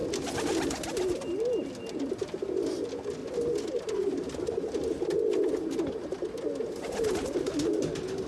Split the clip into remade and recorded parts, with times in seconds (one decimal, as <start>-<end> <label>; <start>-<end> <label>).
0.0-8.3 recorded